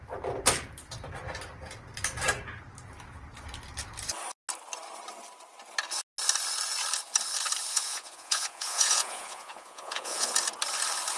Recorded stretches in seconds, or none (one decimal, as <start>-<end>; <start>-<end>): 0.0-7.7; 10.3-11.2